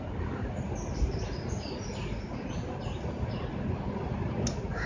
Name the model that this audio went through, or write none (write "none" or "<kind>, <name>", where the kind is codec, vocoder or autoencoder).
none